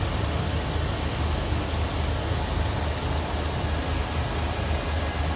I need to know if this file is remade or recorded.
recorded